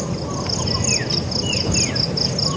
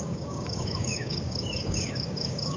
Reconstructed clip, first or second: second